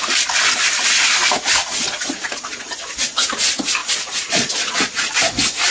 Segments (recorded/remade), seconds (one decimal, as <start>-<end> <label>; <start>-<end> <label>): 0.0-1.6 recorded; 1.6-2.7 remade; 2.7-3.8 recorded; 3.8-5.1 remade; 5.1-5.7 recorded